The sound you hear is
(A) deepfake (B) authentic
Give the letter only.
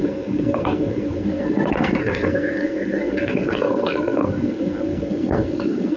A